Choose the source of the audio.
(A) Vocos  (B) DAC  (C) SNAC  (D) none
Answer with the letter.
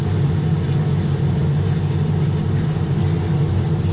D